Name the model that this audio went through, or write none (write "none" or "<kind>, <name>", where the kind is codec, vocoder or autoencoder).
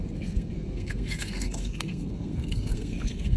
codec, SNAC